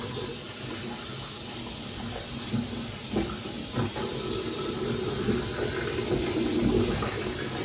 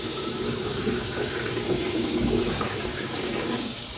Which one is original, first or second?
first